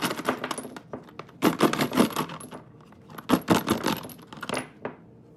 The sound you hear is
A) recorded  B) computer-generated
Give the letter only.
A